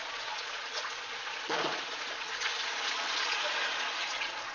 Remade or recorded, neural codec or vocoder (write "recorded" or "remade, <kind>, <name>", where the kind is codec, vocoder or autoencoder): remade, vocoder, Vocos